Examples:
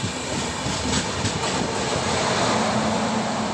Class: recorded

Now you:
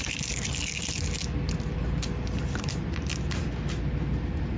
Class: recorded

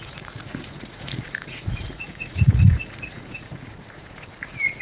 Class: remade